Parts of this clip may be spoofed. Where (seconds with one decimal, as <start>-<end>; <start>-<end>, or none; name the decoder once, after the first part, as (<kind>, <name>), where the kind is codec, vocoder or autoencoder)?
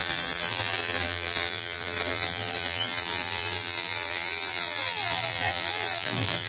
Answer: 0.0-6.5 (vocoder, BigVGAN v2)